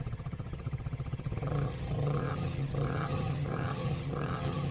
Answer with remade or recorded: remade